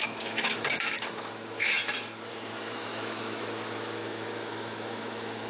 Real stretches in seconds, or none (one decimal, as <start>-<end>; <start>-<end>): 1.8-2.3